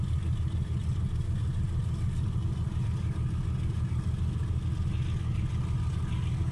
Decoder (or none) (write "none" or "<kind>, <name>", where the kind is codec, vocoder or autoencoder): none